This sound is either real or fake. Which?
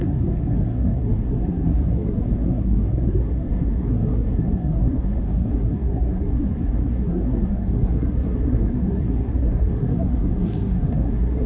fake